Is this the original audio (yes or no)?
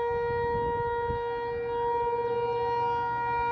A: yes